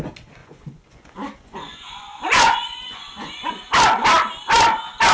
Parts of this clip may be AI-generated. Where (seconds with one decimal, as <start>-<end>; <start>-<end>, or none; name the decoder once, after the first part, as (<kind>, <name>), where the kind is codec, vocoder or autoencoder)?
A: 0.4-3.5 (vocoder, Vocos)